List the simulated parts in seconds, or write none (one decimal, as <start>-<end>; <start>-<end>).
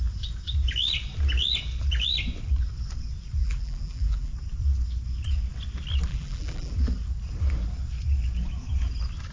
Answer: 3.4-4.3; 6.1-6.7